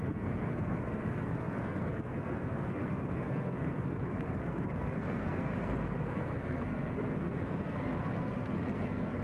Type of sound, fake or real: fake